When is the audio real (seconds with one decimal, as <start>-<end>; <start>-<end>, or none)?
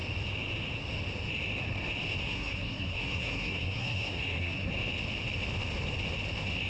0.0-2.2; 4.7-6.7